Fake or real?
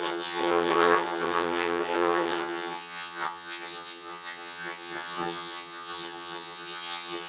fake